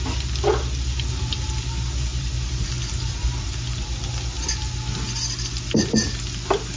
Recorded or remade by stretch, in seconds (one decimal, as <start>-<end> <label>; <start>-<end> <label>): 0.0-2.1 recorded; 2.1-2.6 remade; 2.6-6.8 recorded